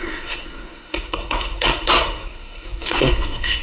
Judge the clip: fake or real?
fake